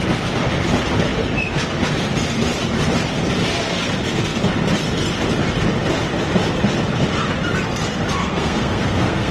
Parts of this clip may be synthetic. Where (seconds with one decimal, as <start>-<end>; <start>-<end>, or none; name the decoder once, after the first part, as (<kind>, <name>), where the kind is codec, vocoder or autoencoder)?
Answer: 8.2-9.3 (codec, SNAC)